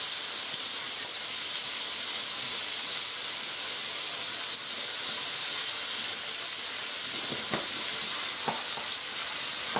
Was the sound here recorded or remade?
recorded